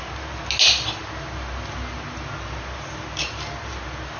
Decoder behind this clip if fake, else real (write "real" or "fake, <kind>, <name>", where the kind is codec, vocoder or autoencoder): real